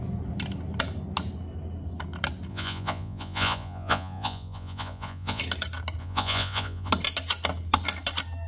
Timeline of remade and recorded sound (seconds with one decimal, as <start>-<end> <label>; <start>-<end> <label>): 0.0-2.5 recorded; 2.5-5.4 remade; 5.4-6.0 recorded; 6.0-6.9 remade; 6.9-8.5 recorded